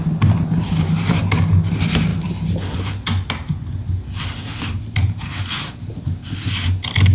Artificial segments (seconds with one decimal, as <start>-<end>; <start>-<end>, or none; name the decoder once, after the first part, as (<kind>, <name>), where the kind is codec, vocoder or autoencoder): none